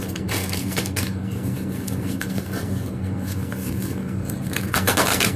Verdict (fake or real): fake